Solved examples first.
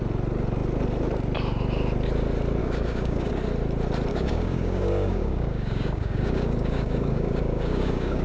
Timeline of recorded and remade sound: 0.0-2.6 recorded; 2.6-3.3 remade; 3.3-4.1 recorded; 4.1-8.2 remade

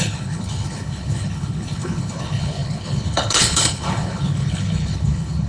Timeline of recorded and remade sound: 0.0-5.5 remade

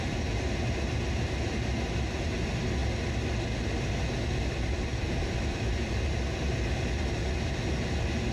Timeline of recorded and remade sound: 0.0-8.3 recorded

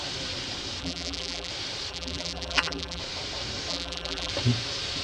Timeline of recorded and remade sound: 0.0-0.8 recorded; 0.8-1.5 remade; 1.5-1.9 recorded; 1.9-3.0 remade; 3.0-3.7 recorded; 3.7-4.3 remade; 4.3-5.0 recorded

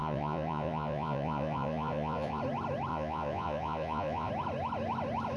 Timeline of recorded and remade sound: 0.0-2.4 remade; 2.4-2.9 recorded; 2.9-4.3 remade; 4.3-5.4 recorded

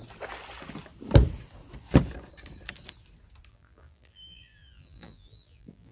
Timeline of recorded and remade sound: 0.0-3.5 recorded; 3.5-5.9 remade

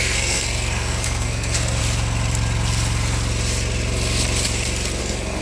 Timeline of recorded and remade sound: 0.0-1.8 remade; 1.8-5.0 recorded; 5.0-5.4 remade

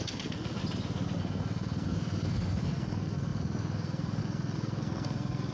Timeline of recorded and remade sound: 0.0-0.6 remade; 0.6-1.2 recorded; 1.2-5.5 remade